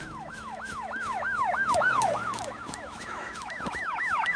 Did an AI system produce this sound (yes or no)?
yes